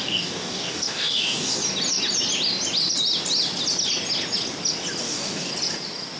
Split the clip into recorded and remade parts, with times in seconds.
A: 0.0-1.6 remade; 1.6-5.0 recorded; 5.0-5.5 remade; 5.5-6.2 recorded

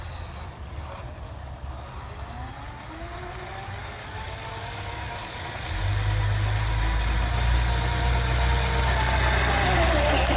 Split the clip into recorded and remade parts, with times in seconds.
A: 0.0-4.0 recorded; 4.0-5.5 remade; 5.5-10.4 recorded

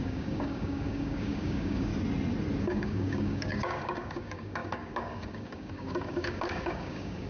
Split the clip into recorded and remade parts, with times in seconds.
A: 0.0-1.9 remade; 1.9-2.6 recorded; 2.6-7.3 remade